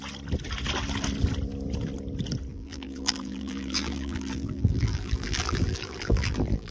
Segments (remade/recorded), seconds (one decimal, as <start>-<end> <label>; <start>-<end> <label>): 0.0-2.5 recorded; 2.5-6.7 remade